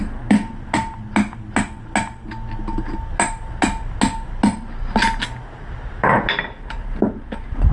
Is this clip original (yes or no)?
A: yes